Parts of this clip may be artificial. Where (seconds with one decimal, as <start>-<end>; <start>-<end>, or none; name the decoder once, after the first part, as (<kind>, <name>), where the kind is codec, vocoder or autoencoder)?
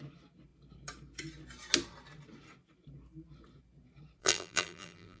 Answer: 4.2-5.2 (vocoder, BigVGAN v2)